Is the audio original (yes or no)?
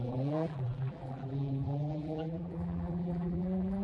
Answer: no